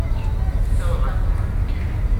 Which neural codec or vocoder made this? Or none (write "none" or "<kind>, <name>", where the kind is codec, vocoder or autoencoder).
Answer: none